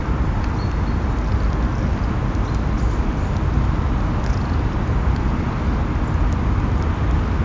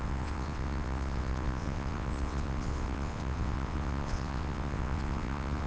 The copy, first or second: second